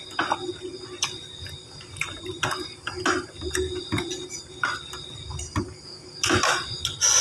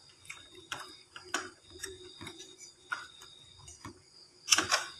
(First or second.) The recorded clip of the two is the first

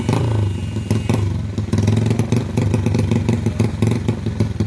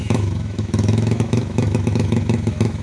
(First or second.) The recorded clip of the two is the first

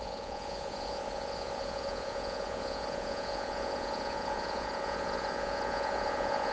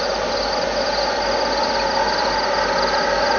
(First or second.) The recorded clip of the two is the second